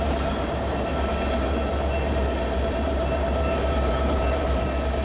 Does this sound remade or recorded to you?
remade